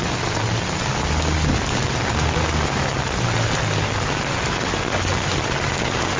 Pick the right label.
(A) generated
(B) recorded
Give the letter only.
B